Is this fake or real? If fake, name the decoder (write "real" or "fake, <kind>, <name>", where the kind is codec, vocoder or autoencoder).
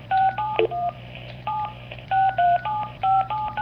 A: fake, vocoder, BigVGAN v2